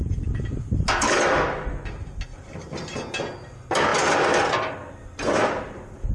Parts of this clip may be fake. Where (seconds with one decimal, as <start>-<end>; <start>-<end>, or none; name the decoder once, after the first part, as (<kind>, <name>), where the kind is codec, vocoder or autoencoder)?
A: 0.0-1.3 (vocoder, BigVGAN v2); 2.3-2.8; 3.9-6.1